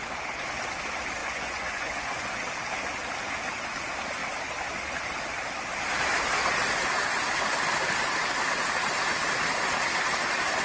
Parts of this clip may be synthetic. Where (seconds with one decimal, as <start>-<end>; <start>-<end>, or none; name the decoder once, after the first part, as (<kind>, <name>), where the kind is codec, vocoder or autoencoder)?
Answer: 1.2-2.3 (vocoder, Vocos)